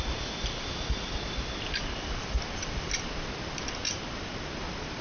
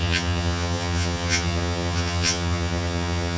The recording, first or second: first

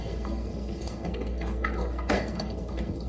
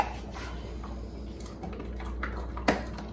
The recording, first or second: second